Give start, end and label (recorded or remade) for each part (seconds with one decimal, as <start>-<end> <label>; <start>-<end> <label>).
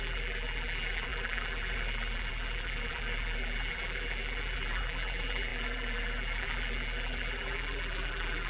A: 0.0-8.5 remade